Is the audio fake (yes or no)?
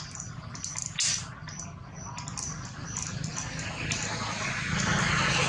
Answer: no